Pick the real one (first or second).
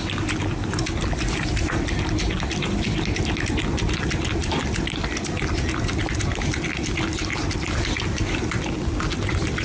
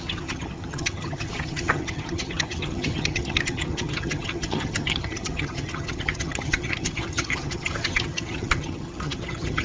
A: first